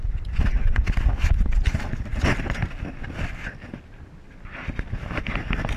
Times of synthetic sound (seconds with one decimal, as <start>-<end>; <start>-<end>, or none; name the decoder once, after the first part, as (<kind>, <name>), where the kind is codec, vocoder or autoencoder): none